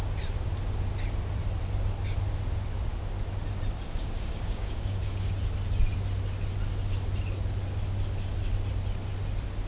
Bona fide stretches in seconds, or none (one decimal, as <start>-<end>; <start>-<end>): 0.0-3.9; 5.3-9.7